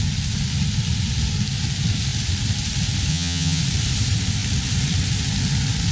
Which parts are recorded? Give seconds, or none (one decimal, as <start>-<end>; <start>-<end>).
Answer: 0.0-3.1; 3.6-5.9